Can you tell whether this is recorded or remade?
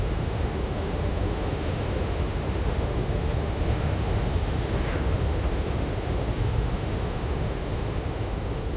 remade